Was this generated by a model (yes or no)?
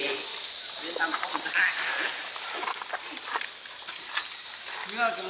no